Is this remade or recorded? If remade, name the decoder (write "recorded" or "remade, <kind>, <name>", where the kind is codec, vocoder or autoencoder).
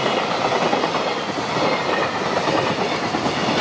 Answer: recorded